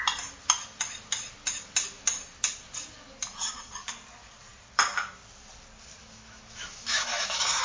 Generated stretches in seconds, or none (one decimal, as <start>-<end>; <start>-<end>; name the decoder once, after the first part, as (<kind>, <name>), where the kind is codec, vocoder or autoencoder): 6.0-7.6 (autoencoder, DAC-VAE)